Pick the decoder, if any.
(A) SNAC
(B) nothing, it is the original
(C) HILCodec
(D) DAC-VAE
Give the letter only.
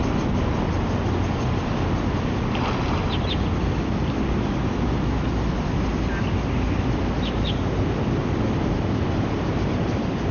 B